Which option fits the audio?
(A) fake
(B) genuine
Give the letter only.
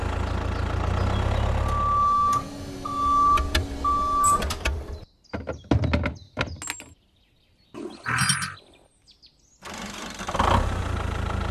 B